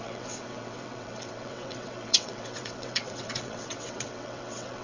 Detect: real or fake fake